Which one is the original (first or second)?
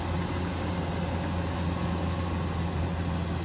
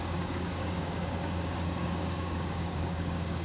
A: first